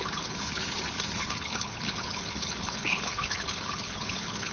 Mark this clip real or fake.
fake